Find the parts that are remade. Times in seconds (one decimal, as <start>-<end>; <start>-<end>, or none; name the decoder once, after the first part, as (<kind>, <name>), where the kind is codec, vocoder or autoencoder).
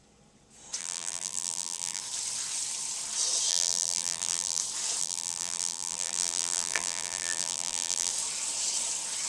0.8-2.0 (vocoder, BigVGAN v2); 3.5-4.6; 5.0-8.1